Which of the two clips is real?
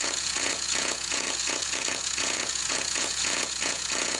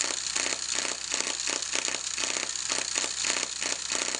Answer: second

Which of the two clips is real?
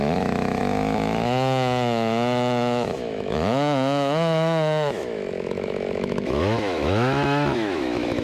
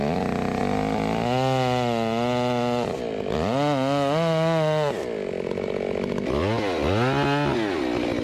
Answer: second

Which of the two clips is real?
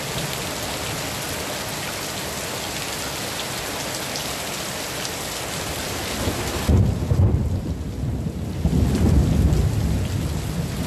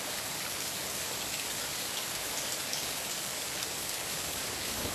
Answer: first